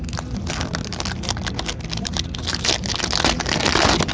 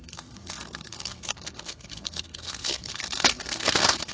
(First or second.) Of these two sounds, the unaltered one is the first